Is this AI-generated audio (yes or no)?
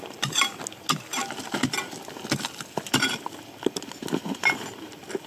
no